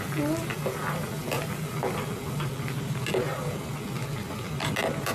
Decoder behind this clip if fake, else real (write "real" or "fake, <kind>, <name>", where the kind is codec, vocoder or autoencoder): real